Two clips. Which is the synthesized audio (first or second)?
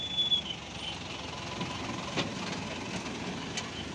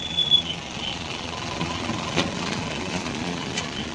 second